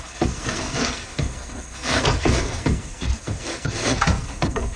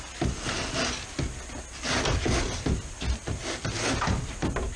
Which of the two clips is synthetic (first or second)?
first